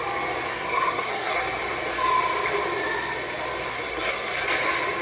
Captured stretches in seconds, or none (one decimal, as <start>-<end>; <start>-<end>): 0.0-0.5; 1.4-3.7; 4.4-5.0

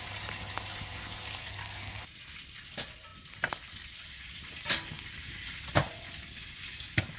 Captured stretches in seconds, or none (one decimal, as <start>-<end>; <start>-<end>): 0.0-1.4; 2.0-7.2

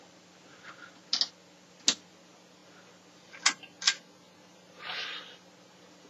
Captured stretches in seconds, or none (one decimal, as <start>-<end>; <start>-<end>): 0.0-6.1

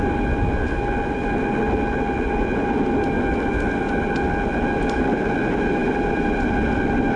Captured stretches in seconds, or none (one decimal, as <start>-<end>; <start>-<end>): 0.0-7.2

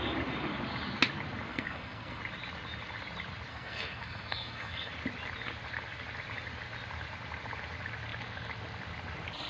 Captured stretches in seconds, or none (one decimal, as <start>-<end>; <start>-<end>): 0.0-1.5; 2.2-3.5; 4.9-9.5

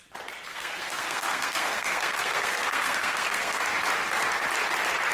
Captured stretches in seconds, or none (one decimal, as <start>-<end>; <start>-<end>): 0.0-0.5; 3.6-5.1

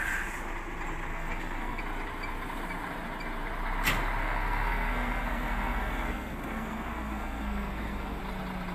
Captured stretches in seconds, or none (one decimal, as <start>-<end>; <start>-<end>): 0.0-1.1; 1.8-4.2; 8.2-8.7

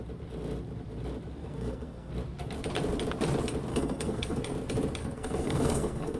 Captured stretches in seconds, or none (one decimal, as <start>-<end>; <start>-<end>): 0.0-1.4; 2.1-3.7; 4.4-5.0